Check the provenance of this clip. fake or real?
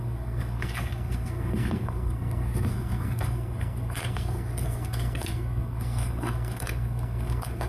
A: fake